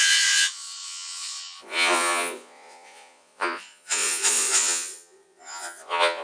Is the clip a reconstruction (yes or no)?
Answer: yes